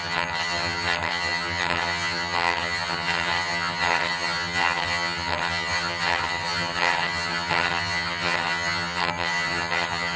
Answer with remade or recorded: remade